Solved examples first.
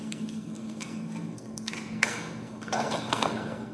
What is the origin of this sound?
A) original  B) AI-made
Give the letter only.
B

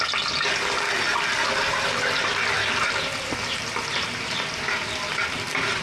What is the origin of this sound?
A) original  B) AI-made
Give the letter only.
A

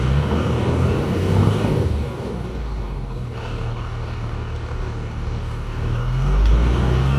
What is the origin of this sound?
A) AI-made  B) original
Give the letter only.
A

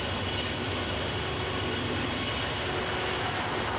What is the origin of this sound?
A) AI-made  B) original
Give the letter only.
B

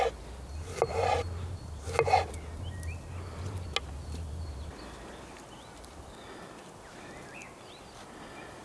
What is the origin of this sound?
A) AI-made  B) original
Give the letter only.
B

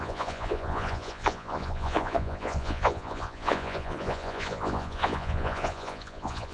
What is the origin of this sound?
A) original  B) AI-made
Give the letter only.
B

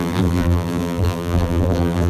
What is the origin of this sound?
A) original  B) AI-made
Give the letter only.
B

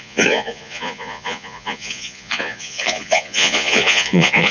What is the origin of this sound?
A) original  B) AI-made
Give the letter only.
B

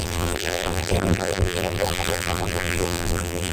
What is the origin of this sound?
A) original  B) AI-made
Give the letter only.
B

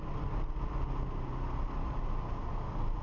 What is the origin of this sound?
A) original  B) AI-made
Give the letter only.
A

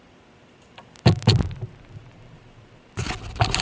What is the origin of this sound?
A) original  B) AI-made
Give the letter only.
A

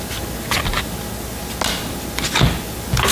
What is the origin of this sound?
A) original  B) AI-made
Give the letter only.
A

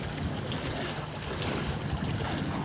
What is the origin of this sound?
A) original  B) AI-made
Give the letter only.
A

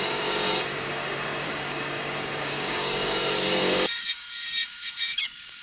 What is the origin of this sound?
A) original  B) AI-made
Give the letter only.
B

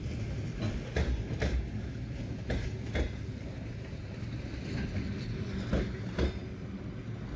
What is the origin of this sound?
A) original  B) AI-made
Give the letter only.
A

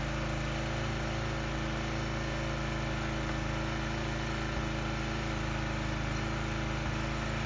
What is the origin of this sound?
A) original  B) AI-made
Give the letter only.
A